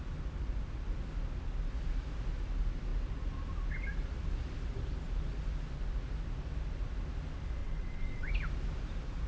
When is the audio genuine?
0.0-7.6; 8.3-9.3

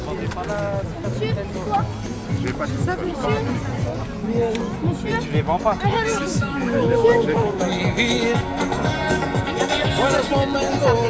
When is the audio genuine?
0.0-6.3; 7.6-11.1

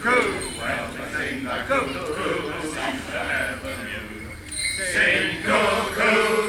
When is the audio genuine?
0.0-2.8; 3.3-6.5

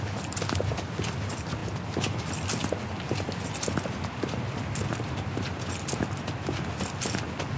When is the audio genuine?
0.0-7.6

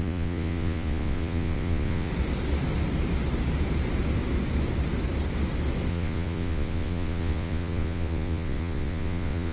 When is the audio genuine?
2.1-5.9

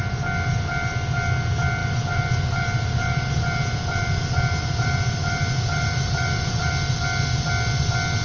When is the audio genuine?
0.0-1.8; 6.7-8.2

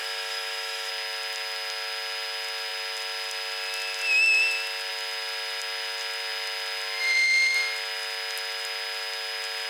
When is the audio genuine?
0.9-9.7

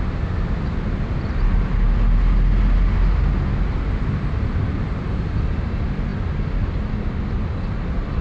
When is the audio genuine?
0.0-8.2